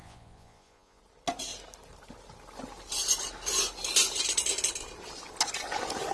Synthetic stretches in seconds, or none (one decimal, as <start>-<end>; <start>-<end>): 0.0-1.0